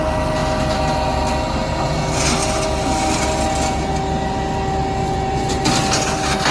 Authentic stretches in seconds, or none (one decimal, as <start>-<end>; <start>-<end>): 0.0-5.0; 5.6-6.5